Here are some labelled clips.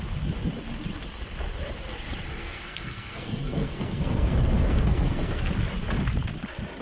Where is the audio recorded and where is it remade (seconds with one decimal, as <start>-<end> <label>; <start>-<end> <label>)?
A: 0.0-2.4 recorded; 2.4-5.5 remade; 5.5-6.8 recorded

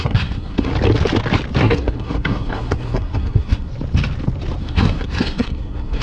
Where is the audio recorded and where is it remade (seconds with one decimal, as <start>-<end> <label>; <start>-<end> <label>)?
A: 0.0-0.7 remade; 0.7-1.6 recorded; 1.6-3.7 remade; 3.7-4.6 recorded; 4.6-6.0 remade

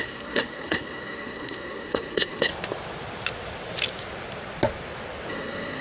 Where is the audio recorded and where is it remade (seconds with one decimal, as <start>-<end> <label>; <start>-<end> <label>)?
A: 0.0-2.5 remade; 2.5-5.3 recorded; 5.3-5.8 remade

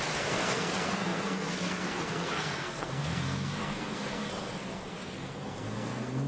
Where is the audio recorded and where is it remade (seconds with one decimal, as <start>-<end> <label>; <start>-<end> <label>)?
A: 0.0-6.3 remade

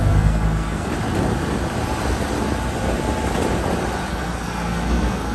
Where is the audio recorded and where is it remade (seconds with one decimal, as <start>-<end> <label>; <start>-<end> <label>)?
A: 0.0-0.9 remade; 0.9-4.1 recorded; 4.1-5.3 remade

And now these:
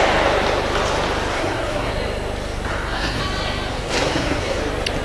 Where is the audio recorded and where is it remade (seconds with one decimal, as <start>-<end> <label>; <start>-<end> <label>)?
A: 0.0-1.3 recorded; 1.3-1.9 remade; 1.9-2.7 recorded; 2.7-3.2 remade; 3.2-3.7 recorded; 3.7-4.6 remade; 4.6-5.0 recorded

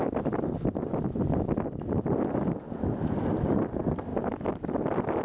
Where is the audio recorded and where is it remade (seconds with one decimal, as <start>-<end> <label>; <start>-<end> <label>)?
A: 0.0-5.2 recorded

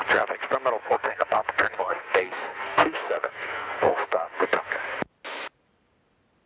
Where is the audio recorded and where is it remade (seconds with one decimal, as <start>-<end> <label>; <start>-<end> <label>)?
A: 0.0-0.8 recorded; 0.8-4.7 remade; 4.7-6.5 recorded